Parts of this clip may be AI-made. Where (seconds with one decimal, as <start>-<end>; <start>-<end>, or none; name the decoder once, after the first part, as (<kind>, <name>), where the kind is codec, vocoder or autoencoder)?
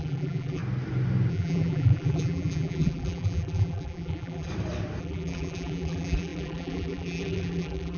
0.0-0.6 (vocoder, BigVGAN v2); 1.3-4.5; 5.0-8.0